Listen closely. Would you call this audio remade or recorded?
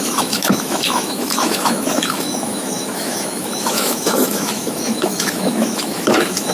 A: remade